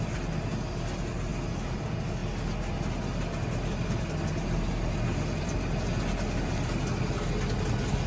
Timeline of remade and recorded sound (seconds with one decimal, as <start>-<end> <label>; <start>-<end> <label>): 0.0-8.1 recorded